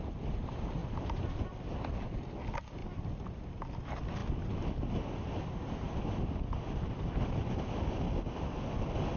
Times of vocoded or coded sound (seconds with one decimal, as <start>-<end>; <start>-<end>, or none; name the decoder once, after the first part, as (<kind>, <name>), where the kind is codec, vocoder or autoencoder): none